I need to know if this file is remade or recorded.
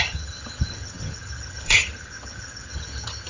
remade